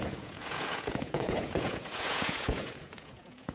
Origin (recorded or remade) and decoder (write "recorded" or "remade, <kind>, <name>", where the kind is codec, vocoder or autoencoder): remade, vocoder, Vocos